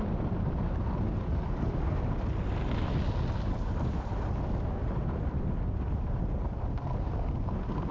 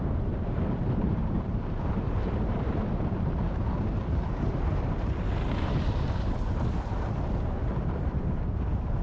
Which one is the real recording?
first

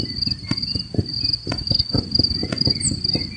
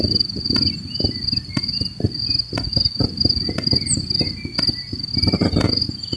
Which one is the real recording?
second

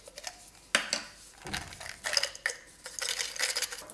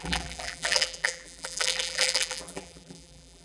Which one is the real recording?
first